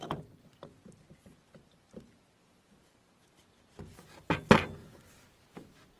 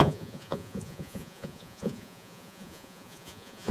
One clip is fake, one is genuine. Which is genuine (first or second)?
first